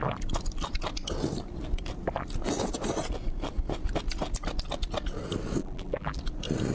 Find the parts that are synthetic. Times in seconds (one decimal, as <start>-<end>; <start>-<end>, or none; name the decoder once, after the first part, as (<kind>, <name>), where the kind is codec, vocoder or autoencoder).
5.6-6.2 (vocoder, BigVGAN v2)